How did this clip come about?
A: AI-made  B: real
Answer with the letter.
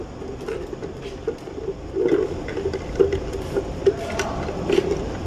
B